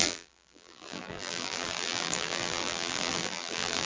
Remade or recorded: remade